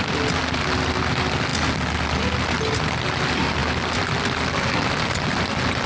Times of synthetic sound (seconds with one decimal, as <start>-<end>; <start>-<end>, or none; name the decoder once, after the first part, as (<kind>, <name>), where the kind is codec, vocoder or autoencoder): none